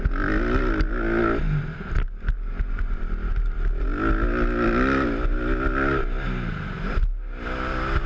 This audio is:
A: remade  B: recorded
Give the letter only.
B